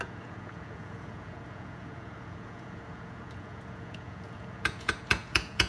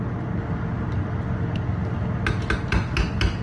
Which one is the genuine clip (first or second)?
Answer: second